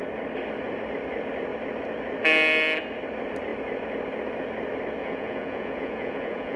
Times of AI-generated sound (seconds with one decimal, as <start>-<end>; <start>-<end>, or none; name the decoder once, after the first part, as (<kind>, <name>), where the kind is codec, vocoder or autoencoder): 5.0-6.6 (vocoder, Vocos)